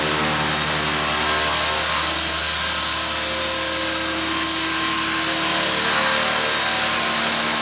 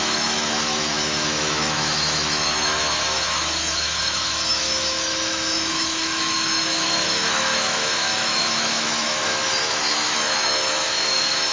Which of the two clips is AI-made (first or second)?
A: second